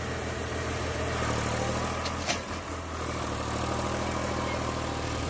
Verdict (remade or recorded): recorded